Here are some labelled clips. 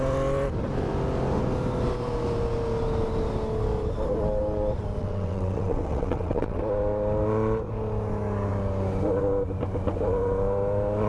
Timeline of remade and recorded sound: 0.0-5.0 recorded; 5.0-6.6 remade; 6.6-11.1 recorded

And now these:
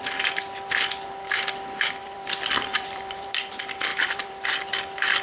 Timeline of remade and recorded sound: 0.0-2.0 recorded; 2.0-3.5 remade; 3.5-3.9 recorded; 3.9-4.6 remade; 4.6-5.2 recorded

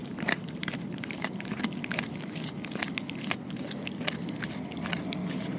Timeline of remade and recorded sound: 0.0-1.6 remade; 1.6-5.6 recorded

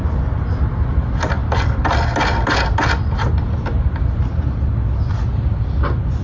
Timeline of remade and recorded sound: 0.0-6.2 recorded

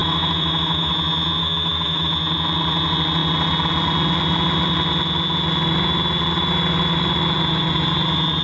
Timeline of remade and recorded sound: 0.0-0.9 remade; 0.9-1.4 recorded; 1.4-2.1 remade; 2.1-8.4 recorded

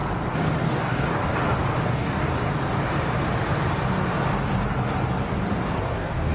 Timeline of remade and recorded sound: 0.0-0.6 recorded; 0.6-1.2 remade; 1.2-1.9 recorded; 1.9-2.3 remade; 2.3-5.8 recorded; 5.8-6.3 remade

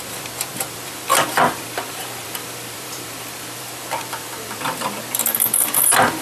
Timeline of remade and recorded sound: 0.0-6.2 remade